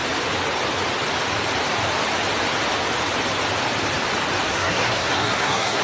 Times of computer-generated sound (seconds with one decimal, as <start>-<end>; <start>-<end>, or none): 4.5-5.8